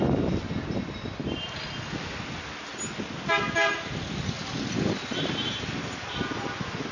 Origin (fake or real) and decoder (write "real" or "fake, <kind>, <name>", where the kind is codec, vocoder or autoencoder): real